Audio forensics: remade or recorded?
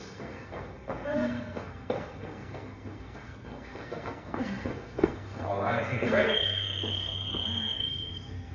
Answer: remade